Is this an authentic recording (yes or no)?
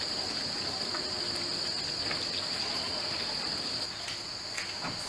yes